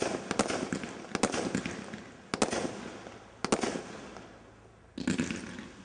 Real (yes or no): yes